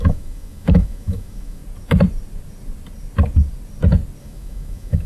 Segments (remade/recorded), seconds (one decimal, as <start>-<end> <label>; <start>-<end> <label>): 0.0-1.6 remade; 1.6-4.2 recorded; 4.2-5.1 remade

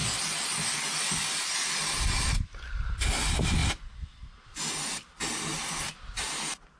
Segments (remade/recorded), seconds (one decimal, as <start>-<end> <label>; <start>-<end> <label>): 0.0-6.8 recorded

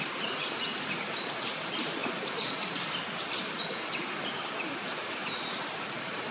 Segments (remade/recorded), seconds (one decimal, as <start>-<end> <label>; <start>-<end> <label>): 0.0-2.0 remade; 2.0-4.3 recorded; 4.3-6.3 remade

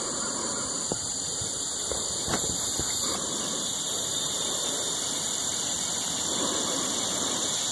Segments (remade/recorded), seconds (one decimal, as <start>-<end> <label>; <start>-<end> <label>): 0.0-6.3 remade; 6.3-7.1 recorded; 7.1-7.7 remade

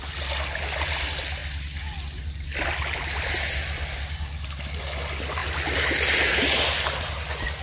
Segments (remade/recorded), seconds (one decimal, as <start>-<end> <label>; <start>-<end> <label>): 0.0-7.6 recorded

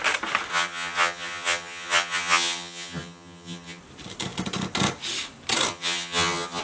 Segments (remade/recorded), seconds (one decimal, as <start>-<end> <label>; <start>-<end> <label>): 0.0-0.5 recorded; 0.5-3.8 remade; 3.8-5.7 recorded; 5.7-6.6 remade